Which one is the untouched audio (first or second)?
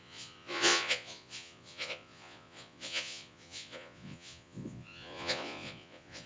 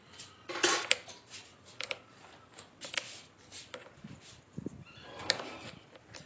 second